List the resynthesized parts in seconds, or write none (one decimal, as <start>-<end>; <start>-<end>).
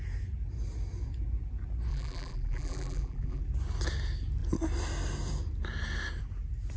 1.9-3.4